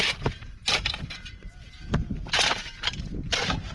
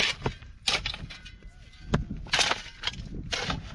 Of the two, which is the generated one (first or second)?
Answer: first